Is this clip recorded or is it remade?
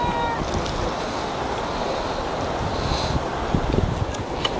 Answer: recorded